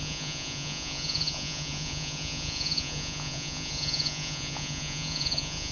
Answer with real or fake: fake